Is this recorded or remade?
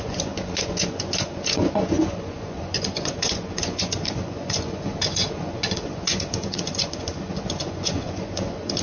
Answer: remade